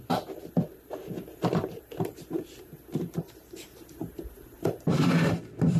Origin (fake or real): fake